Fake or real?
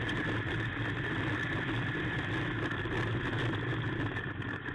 real